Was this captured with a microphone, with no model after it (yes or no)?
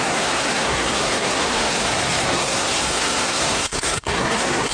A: no